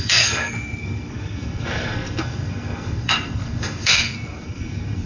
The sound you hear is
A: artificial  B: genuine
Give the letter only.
A